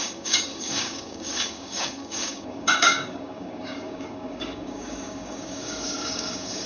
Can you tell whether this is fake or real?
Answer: fake